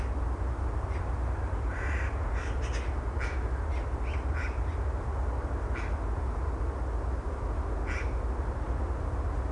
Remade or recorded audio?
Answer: recorded